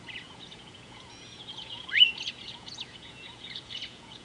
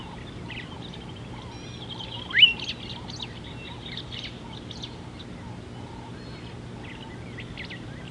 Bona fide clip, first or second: second